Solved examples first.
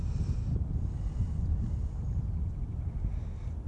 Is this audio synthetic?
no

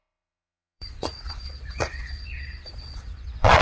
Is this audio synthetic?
yes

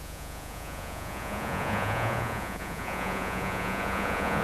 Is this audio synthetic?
yes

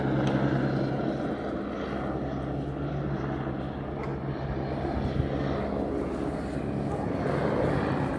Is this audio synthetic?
no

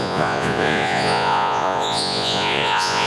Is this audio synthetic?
yes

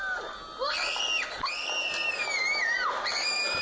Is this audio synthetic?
no